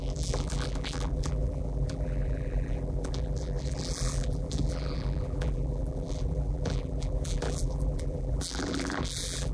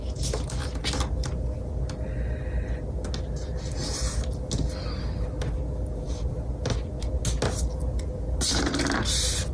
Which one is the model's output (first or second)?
first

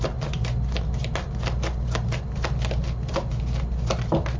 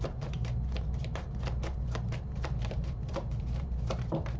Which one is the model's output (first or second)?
second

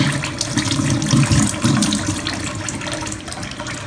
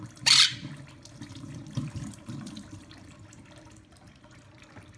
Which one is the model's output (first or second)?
second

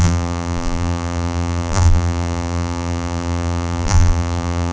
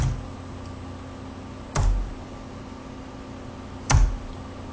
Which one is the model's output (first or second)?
first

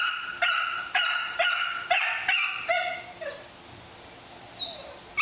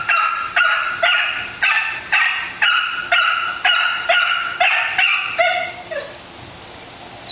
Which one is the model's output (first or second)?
second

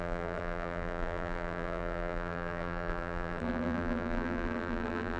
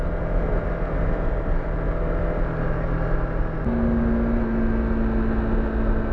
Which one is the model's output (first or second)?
first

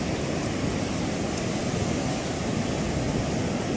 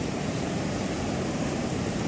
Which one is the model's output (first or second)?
second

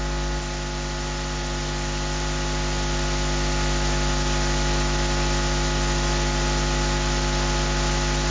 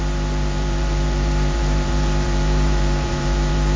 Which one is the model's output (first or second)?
second